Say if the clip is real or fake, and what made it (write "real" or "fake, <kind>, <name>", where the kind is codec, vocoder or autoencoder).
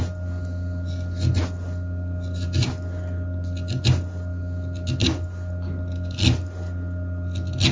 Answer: real